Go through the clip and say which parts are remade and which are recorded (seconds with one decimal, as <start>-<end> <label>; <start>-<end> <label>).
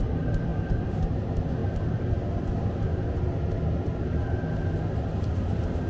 0.0-5.9 recorded